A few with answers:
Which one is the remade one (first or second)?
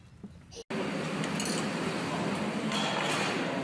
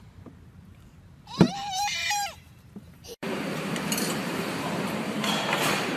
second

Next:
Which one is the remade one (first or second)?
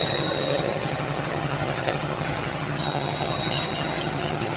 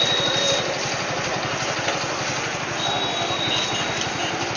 first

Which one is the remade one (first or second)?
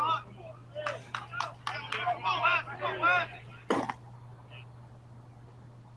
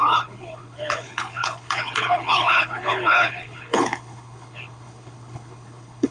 second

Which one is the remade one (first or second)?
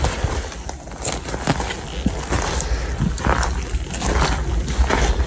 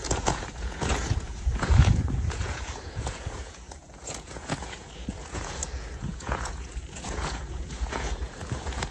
second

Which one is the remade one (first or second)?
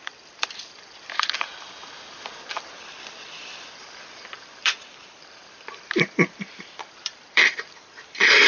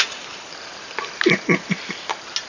first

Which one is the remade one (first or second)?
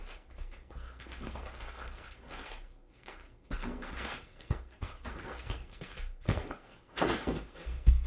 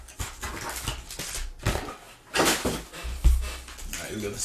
first